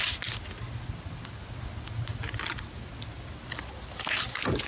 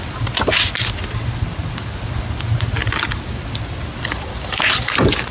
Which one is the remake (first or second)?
second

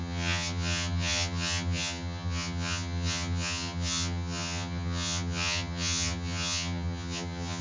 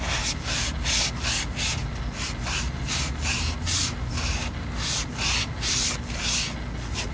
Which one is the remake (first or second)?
first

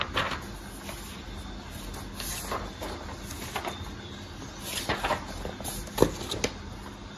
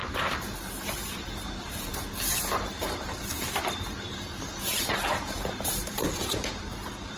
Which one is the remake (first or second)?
second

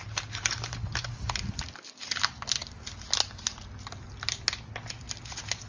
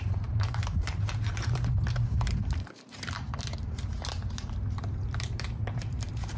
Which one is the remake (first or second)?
second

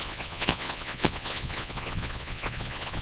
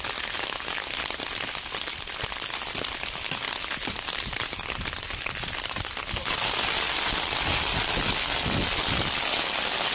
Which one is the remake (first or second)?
first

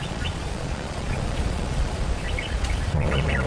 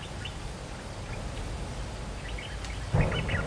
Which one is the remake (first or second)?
first